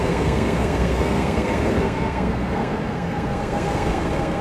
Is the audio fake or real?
fake